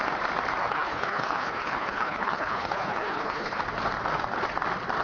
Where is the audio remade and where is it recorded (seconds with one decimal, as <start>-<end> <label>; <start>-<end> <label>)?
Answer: 0.0-0.6 recorded; 0.6-3.6 remade; 3.6-5.0 recorded